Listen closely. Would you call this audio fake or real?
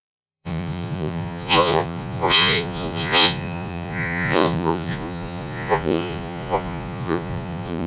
fake